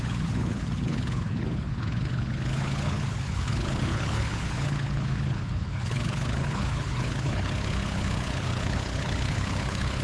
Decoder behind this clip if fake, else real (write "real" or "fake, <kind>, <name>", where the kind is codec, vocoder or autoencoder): fake, codec, HILCodec